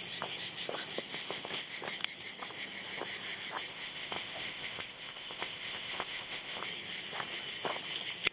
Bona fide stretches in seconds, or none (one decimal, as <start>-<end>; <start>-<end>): 0.0-1.1; 1.8-3.7; 6.6-8.3